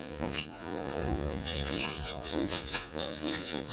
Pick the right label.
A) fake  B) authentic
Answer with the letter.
A